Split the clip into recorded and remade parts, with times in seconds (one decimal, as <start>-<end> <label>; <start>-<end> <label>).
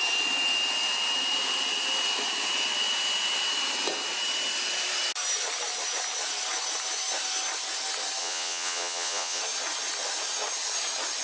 0.0-8.2 recorded; 8.2-9.4 remade; 9.4-11.2 recorded